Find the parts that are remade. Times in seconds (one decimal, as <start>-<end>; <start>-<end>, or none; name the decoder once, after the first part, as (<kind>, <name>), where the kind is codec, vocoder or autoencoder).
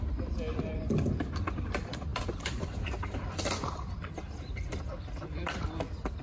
2.1-2.8 (vocoder, BigVGAN v2)